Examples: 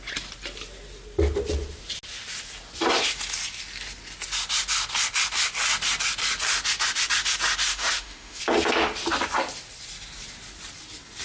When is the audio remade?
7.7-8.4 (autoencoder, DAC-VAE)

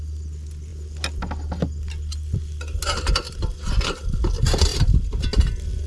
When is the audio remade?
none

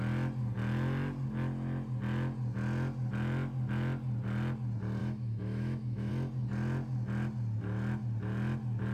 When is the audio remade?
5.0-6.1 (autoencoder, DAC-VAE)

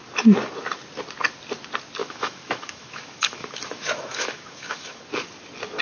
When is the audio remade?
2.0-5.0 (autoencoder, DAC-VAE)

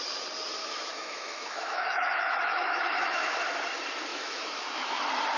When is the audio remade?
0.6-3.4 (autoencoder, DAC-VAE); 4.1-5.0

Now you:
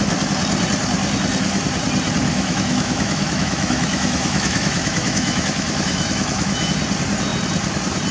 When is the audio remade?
2.3-6.7 (autoencoder, DAC-VAE)

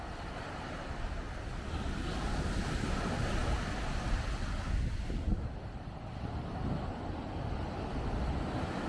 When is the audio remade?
none